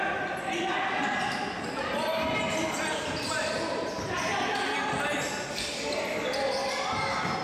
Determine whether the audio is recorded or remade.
recorded